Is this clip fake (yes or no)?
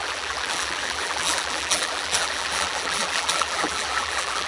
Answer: yes